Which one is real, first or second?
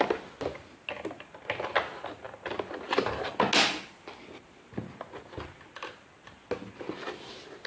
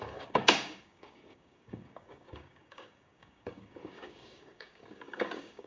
first